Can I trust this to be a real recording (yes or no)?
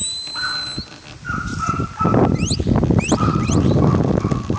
yes